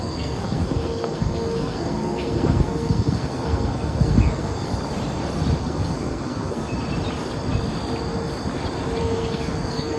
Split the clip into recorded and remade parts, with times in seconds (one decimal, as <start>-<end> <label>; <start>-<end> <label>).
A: 0.0-4.7 remade; 4.7-5.6 recorded; 5.6-6.6 remade; 6.6-9.0 recorded; 9.0-10.0 remade